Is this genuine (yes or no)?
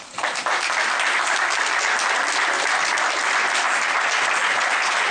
yes